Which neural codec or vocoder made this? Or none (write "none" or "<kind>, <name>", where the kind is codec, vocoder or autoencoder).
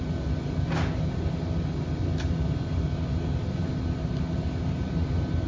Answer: none